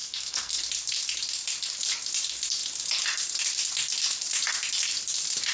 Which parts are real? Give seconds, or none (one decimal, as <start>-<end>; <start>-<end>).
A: 0.6-5.5